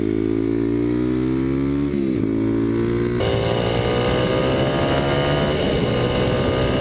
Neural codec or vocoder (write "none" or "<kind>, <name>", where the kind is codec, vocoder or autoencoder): none